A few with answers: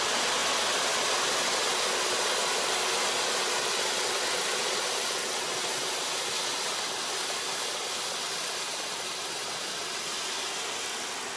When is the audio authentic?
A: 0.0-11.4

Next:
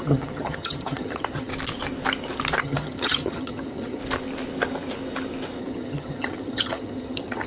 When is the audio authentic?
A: 1.5-2.6; 4.0-5.6

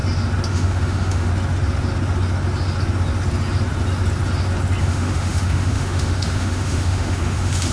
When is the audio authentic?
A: 0.0-0.5; 1.3-4.8

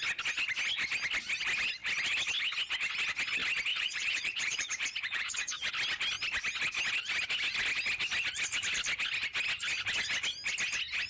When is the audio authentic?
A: 0.0-3.7; 5.7-11.1